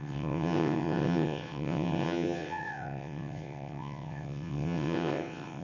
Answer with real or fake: fake